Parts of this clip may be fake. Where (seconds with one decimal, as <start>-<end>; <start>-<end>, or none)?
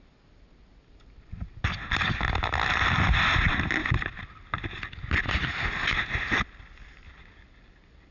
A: none